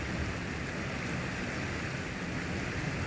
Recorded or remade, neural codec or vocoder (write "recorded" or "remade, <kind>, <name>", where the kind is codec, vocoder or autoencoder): recorded